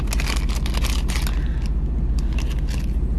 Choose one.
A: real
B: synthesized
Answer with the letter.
A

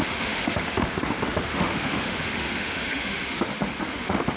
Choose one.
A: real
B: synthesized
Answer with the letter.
B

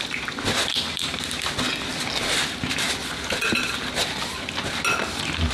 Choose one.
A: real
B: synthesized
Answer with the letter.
A